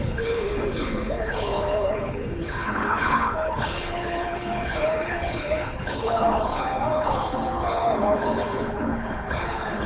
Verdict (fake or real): fake